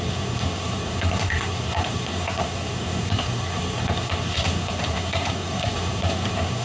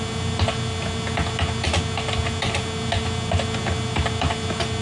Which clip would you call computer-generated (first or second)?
first